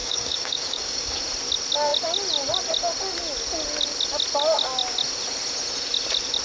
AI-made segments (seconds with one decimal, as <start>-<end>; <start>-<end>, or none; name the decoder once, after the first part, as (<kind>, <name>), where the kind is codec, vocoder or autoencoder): 0.0-1.2 (codec, DAC)